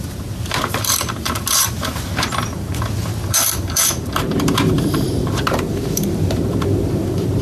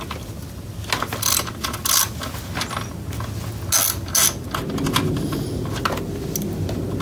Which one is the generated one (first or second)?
first